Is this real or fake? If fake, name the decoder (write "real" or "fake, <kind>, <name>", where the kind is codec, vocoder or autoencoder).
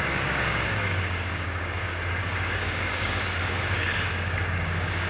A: fake, codec, DAC